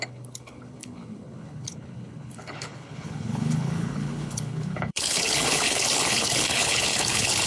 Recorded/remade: remade